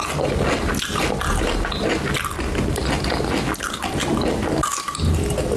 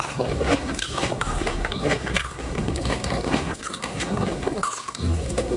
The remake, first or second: second